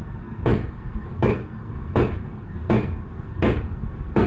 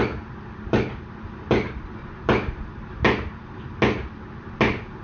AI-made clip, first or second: first